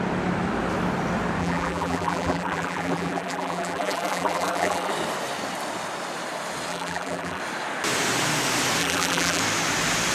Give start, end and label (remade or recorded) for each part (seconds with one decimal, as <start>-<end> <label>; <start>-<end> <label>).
0.0-1.4 recorded; 1.4-4.9 remade; 4.9-6.7 recorded; 6.7-7.4 remade; 7.4-8.8 recorded; 8.8-9.4 remade; 9.4-10.1 recorded

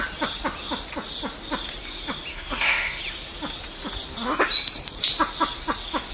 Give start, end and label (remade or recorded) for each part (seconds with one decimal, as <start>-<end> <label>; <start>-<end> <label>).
0.0-2.3 recorded; 2.3-3.0 remade; 3.0-6.1 recorded

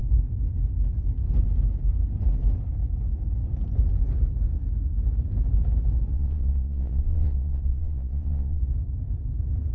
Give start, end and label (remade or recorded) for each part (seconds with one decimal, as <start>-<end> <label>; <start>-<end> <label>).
0.0-6.1 recorded; 6.1-8.6 remade; 8.6-9.7 recorded

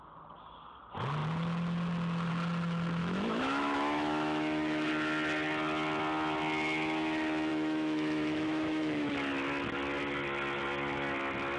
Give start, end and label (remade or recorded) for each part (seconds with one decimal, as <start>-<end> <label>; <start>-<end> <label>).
0.0-3.0 recorded; 3.0-4.9 remade; 4.9-7.5 recorded; 7.5-9.1 remade; 9.1-11.6 recorded

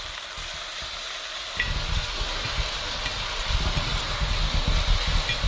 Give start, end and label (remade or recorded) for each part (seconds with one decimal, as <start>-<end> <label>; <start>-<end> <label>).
0.0-5.5 recorded

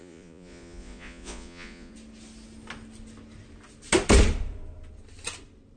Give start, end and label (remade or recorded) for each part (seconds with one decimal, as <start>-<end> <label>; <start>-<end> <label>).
0.0-1.9 remade; 1.9-5.8 recorded